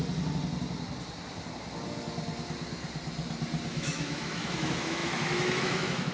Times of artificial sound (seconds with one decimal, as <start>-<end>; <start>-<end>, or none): 3.7-6.1